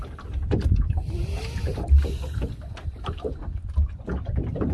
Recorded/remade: recorded